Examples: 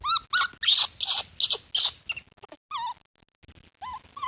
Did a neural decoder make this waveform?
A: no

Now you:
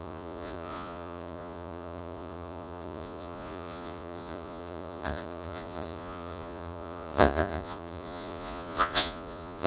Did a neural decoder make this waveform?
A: yes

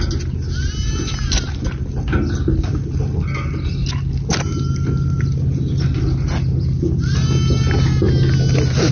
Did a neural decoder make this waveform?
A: no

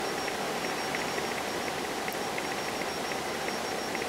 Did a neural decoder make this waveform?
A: no